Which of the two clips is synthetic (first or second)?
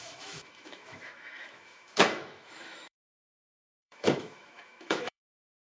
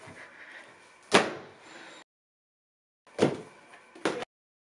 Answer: first